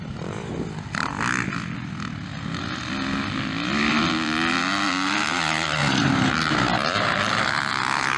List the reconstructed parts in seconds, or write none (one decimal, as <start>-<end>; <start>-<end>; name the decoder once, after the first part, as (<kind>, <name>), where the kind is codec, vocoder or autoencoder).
5.8-7.7 (vocoder, BigVGAN v2)